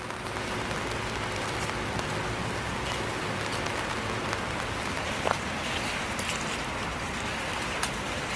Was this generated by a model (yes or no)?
no